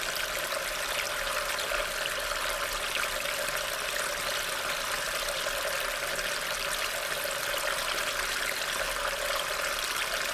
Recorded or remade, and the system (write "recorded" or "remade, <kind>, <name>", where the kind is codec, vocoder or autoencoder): recorded